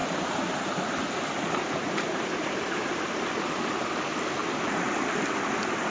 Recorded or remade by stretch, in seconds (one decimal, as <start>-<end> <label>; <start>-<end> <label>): 0.0-3.5 remade; 3.5-5.9 recorded